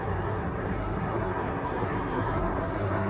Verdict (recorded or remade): remade